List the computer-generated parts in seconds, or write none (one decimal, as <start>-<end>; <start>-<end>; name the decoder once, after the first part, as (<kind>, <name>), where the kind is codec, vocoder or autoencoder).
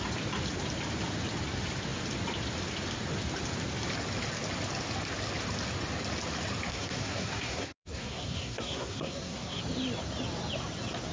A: 6.7-9.6 (codec, SNAC)